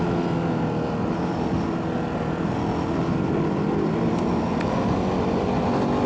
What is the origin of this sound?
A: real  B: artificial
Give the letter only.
A